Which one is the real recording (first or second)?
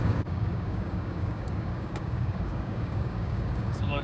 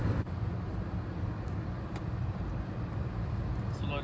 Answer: second